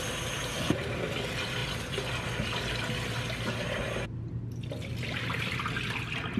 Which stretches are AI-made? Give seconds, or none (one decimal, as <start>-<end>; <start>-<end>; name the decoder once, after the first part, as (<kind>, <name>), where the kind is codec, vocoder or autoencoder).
none